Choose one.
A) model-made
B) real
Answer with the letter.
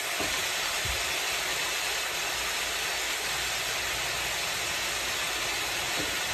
B